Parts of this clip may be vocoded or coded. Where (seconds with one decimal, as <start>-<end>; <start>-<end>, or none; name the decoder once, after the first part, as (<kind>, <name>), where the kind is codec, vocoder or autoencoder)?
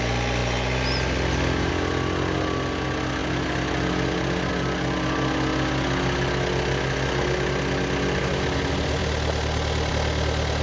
none